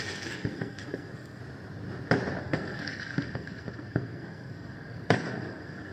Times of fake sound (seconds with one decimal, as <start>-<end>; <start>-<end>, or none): 0.0-1.4; 2.4-5.9